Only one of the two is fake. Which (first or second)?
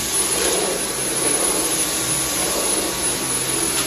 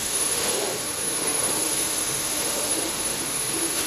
second